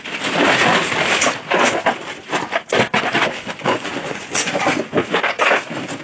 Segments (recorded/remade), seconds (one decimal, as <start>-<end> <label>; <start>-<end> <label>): 0.0-2.9 recorded; 2.9-4.5 remade; 4.5-6.0 recorded